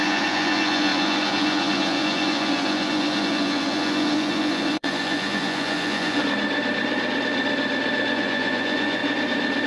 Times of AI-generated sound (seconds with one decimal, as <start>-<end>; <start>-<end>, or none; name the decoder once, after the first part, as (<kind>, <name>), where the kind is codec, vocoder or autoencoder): 0.0-6.2 (vocoder, Vocos); 8.1-9.0